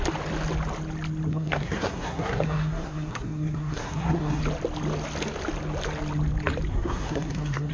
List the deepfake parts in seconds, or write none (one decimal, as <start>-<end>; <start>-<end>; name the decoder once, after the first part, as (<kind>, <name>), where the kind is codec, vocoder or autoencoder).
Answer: 1.3-4.4 (codec, SNAC); 6.7-7.7

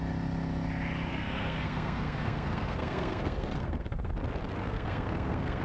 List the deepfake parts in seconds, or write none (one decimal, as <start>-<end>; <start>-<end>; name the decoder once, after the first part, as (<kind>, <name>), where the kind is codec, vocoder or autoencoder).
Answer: 1.1-4.1 (codec, SNAC); 4.6-5.6

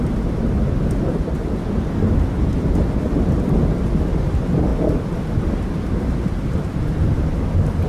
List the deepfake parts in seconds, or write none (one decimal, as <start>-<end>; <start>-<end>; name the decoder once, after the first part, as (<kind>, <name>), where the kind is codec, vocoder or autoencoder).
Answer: none

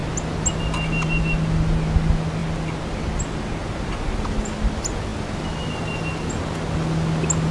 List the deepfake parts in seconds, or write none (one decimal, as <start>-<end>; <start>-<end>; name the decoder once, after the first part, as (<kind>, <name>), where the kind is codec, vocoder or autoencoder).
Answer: none

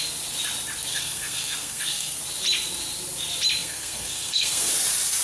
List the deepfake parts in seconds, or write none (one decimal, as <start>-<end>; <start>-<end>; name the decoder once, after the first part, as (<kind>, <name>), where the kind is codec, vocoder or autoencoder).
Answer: 0.9-2.2 (codec, SNAC); 3.6-4.7